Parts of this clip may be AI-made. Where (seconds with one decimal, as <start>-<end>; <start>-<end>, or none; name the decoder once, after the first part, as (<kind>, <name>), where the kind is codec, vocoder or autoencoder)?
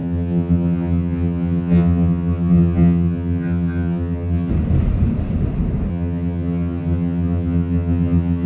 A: 0.0-4.5 (vocoder, HiFi-GAN); 5.9-8.5